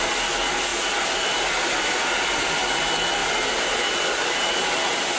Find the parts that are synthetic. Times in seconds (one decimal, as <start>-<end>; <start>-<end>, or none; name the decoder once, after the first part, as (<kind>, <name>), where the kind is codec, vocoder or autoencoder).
0.7-2.8 (vocoder, BigVGAN v2); 3.2-4.5